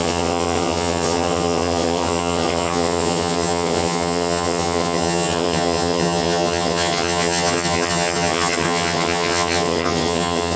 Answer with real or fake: fake